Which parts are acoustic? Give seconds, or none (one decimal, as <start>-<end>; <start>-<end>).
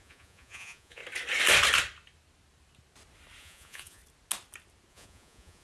1.0-3.4; 4.0-4.9